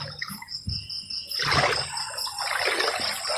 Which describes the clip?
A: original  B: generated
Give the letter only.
A